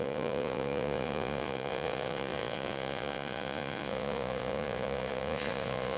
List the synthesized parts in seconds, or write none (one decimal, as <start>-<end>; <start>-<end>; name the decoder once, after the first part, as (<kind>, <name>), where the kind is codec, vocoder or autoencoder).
0.0-6.0 (vocoder, Vocos)